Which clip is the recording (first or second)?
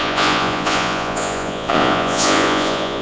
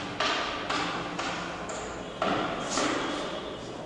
second